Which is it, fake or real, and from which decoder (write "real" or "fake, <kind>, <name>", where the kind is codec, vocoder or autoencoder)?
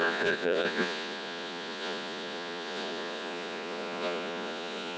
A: fake, vocoder, Vocos